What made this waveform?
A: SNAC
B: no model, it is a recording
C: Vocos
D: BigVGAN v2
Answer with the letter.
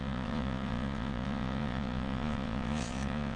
C